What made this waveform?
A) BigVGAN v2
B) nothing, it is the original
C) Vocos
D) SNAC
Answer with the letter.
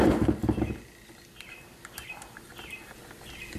B